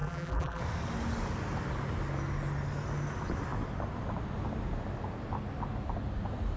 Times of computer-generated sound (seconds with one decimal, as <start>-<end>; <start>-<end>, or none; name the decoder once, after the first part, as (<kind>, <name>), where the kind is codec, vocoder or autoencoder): 0.0-0.6 (vocoder, BigVGAN v2)